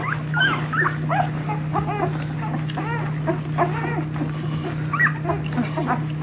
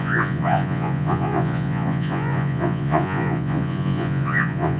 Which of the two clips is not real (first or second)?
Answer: second